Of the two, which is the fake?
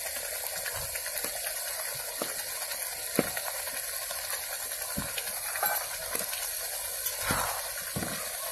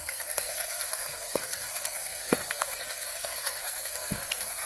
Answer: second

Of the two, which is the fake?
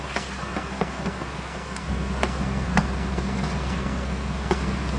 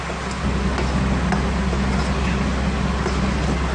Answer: first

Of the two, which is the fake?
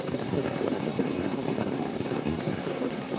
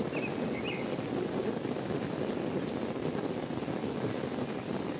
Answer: first